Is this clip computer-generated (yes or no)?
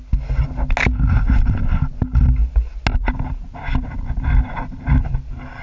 no